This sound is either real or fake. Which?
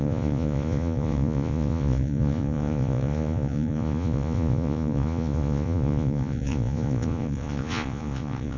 fake